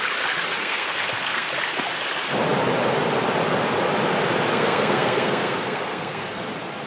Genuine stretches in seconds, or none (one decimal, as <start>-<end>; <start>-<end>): 0.0-0.6; 1.5-4.5; 6.4-6.9